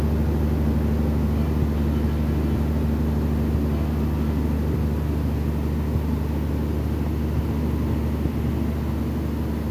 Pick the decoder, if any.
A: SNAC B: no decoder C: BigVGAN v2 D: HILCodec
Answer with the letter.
B